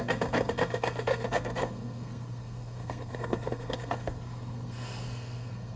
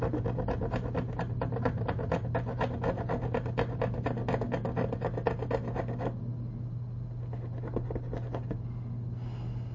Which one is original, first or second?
second